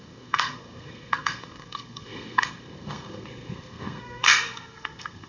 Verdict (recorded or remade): remade